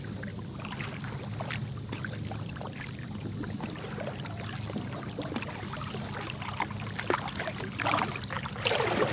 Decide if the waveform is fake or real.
real